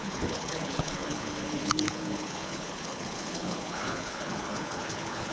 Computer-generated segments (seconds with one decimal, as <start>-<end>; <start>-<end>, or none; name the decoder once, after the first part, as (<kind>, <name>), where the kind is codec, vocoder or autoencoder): 0.0-5.3 (codec, HILCodec)